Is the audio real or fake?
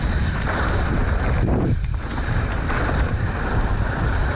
fake